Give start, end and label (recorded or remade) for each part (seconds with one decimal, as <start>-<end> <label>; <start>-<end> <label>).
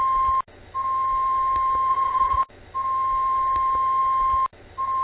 0.0-1.9 recorded; 1.9-2.5 remade; 2.5-5.0 recorded